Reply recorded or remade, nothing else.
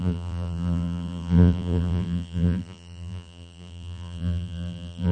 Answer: remade